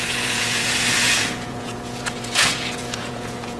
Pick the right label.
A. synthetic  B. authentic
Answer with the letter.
A